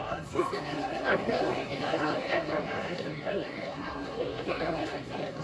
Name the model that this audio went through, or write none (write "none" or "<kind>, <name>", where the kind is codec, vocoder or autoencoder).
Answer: codec, SNAC